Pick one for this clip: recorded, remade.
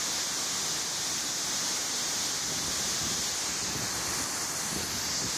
recorded